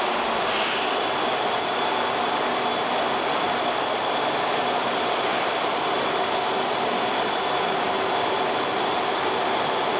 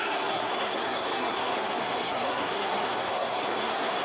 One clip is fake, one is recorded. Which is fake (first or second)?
second